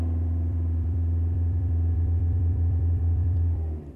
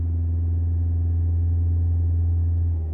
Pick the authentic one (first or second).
second